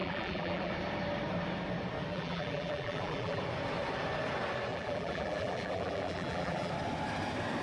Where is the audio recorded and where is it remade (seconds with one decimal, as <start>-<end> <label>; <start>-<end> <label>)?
0.0-0.7 remade; 0.7-2.1 recorded; 2.1-3.4 remade; 3.4-4.7 recorded; 4.7-6.7 remade; 6.7-7.6 recorded